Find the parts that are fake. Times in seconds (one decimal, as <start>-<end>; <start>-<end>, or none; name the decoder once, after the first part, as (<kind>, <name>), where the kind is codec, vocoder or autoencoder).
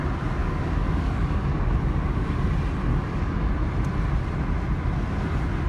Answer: 0.4-2.4 (codec, DAC); 2.9-3.5